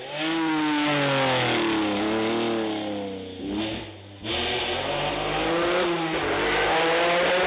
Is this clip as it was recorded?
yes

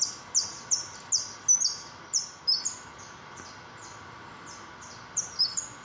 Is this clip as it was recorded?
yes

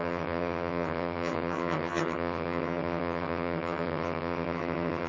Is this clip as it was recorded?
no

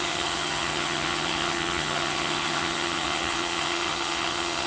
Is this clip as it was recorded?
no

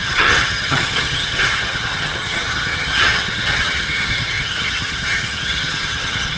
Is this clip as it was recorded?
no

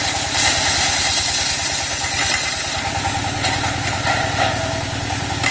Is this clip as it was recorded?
yes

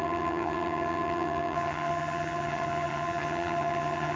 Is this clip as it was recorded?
no